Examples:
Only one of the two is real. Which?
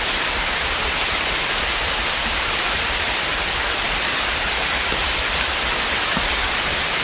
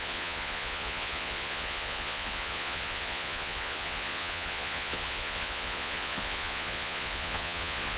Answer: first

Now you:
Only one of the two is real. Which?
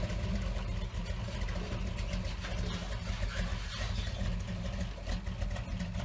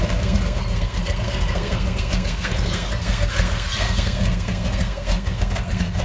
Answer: first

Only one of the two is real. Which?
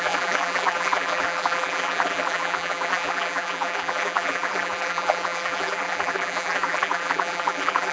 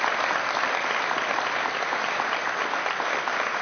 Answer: second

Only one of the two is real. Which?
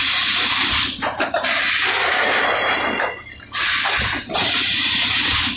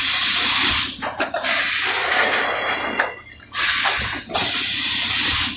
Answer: second